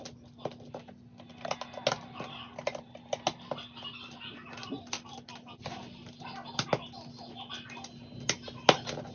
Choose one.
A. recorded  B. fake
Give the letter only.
A